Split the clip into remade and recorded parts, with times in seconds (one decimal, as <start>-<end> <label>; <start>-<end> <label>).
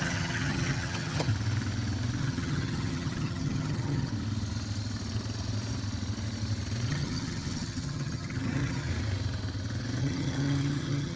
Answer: 0.0-1.3 remade; 1.3-2.2 recorded; 2.2-4.1 remade; 4.1-6.9 recorded; 6.9-8.9 remade; 8.9-10.0 recorded; 10.0-11.2 remade